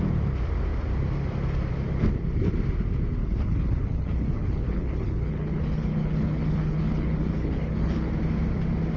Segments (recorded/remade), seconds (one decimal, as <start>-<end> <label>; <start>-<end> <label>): 0.0-3.2 recorded; 3.2-8.1 remade; 8.1-9.0 recorded